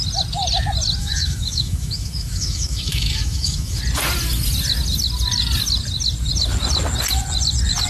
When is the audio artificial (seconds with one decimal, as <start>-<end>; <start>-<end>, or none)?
1.0-3.8